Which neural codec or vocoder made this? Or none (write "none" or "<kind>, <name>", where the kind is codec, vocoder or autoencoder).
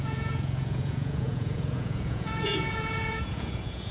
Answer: vocoder, Vocos